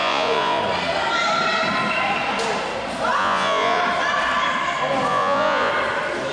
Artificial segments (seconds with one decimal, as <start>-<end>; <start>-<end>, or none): 0.0-0.6; 3.2-3.8; 5.1-5.7